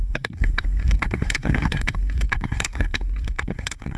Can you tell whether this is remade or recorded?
remade